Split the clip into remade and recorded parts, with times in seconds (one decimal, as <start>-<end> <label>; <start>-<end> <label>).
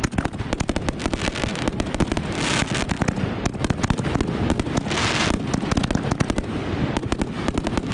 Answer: 0.0-7.9 recorded